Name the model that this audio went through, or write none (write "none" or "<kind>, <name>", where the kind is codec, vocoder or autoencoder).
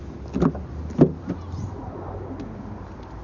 none